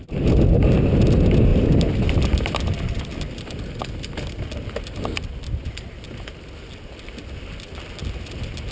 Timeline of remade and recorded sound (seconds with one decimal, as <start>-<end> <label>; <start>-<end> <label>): 0.0-8.7 recorded